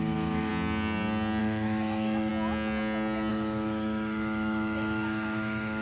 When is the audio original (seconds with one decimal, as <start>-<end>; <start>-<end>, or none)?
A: 0.5-1.4; 2.3-3.3